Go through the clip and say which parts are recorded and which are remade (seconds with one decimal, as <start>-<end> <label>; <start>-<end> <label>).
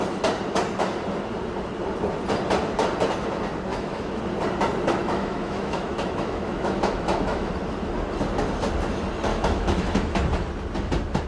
0.0-3.7 recorded; 3.7-4.2 remade; 4.2-5.0 recorded; 5.0-7.5 remade; 7.5-9.3 recorded; 9.3-10.1 remade; 10.1-11.3 recorded